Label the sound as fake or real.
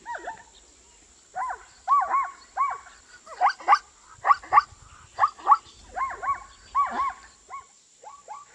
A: real